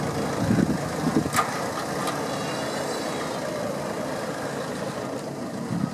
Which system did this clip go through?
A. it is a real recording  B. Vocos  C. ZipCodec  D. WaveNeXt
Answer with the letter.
A